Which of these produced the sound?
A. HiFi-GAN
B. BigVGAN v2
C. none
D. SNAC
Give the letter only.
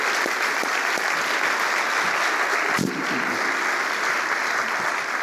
C